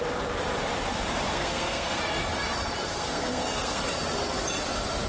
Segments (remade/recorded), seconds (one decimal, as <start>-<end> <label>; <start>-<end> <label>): 0.0-1.3 recorded; 1.3-2.0 remade; 2.0-2.9 recorded; 2.9-3.8 remade; 3.8-5.1 recorded